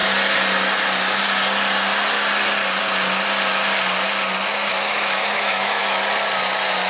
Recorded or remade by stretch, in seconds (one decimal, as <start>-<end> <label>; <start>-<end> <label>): 0.0-4.7 recorded; 4.7-5.8 remade; 5.8-6.9 recorded